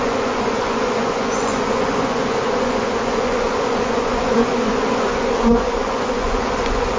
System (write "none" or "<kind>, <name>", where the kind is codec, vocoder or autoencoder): vocoder, Vocos